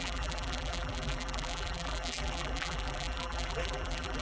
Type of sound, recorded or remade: remade